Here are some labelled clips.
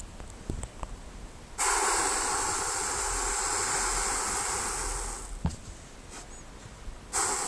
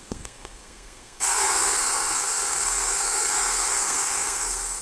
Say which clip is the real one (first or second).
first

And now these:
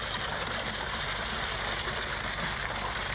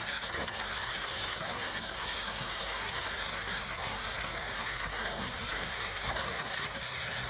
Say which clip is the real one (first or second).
first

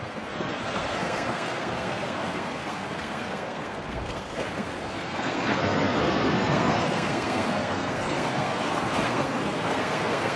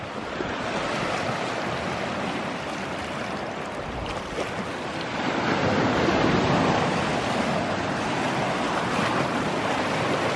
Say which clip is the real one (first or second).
second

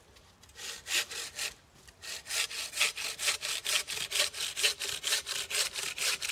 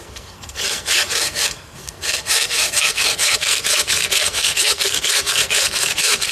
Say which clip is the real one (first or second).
first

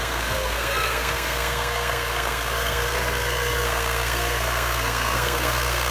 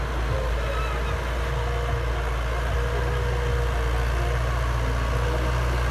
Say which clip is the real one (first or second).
second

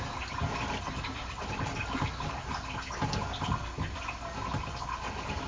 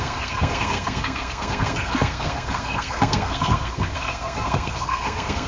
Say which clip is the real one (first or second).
first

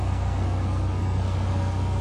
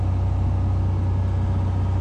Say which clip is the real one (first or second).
second